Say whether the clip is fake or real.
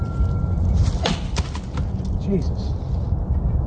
real